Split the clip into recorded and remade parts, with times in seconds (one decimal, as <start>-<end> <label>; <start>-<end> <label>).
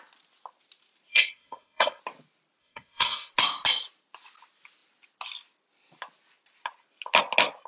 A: 0.0-1.1 recorded; 1.1-2.0 remade; 2.0-2.6 recorded; 2.6-3.3 remade; 3.3-7.7 recorded